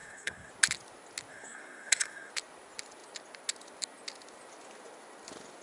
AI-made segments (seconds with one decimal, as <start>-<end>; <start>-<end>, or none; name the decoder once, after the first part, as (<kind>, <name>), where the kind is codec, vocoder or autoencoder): 0.0-0.5 (codec, SNAC); 1.3-2.3